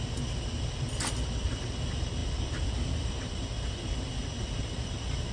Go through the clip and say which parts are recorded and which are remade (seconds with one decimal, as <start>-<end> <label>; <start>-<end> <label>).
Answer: 0.0-5.3 recorded